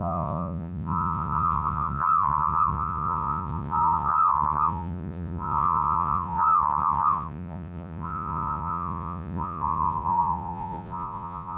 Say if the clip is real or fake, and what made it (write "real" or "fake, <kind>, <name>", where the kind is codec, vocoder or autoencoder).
fake, vocoder, Vocos